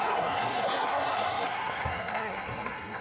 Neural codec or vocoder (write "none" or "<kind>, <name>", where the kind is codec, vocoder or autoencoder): codec, SNAC